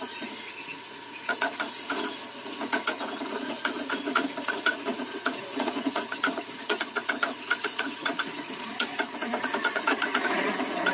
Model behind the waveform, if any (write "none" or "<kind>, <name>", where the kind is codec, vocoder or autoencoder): vocoder, Vocos